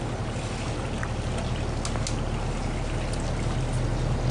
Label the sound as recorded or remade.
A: recorded